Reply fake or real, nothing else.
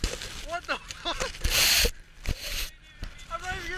real